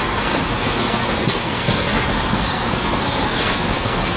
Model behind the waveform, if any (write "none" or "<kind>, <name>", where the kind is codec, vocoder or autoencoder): codec, SNAC